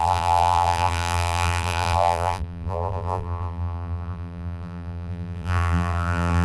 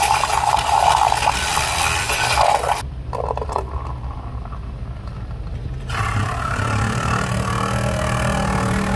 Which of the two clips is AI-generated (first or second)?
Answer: first